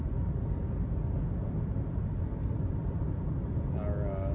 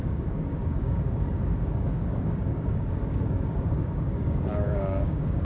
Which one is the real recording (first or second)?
first